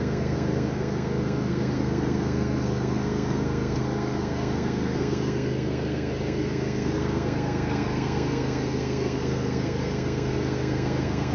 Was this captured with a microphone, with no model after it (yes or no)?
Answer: no